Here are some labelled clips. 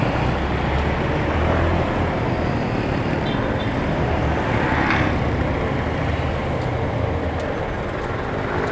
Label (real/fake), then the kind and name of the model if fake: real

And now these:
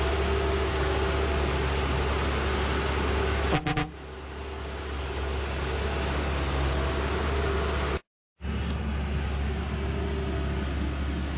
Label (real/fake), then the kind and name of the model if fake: real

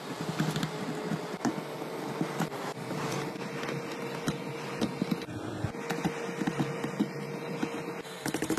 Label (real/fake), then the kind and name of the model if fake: real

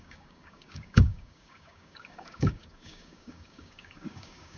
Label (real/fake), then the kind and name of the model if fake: fake, codec, DAC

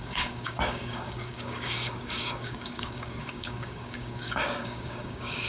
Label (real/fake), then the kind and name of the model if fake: fake, codec, DAC